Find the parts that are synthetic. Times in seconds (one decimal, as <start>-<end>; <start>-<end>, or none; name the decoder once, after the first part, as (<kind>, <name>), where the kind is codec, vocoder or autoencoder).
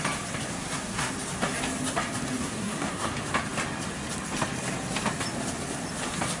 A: 0.5-1.1 (codec, SNAC); 2.4-3.1